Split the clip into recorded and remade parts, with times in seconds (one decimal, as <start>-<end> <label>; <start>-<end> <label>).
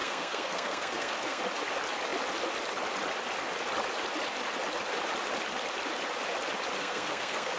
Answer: 0.0-1.4 remade; 1.4-6.8 recorded; 6.8-7.6 remade